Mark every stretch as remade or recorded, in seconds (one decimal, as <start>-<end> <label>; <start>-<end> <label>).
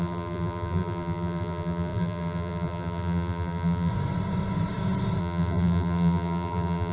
0.0-3.9 remade; 3.9-5.2 recorded; 5.2-6.9 remade